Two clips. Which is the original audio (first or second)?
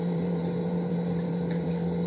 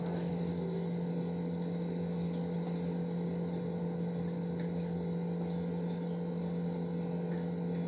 second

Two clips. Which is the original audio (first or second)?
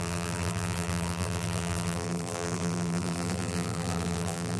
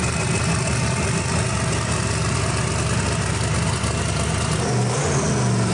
second